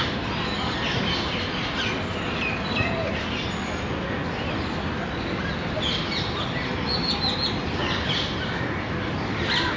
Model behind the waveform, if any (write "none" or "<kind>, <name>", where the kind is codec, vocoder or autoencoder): none